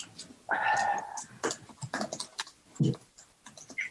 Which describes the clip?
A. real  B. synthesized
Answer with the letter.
A